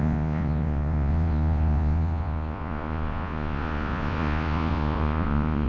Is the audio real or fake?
fake